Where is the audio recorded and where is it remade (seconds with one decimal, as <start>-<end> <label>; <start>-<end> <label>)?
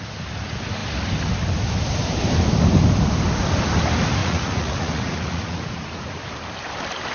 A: 0.0-4.2 recorded; 4.2-6.2 remade; 6.2-7.1 recorded